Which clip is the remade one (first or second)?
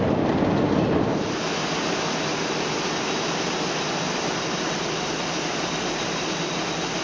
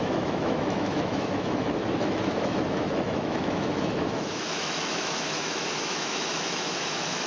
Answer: second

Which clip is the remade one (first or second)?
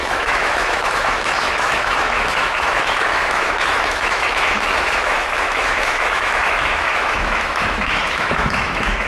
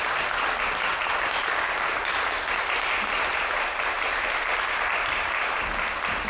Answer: first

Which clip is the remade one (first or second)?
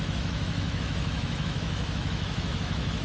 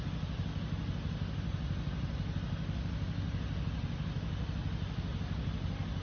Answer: first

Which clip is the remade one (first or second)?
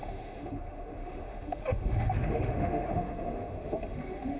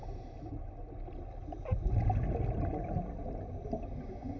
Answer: first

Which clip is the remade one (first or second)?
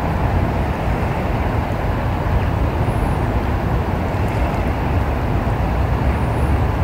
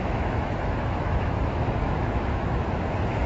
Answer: second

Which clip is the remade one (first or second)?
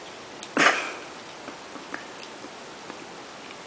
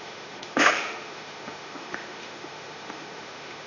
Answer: second